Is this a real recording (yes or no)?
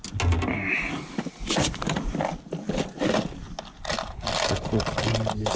yes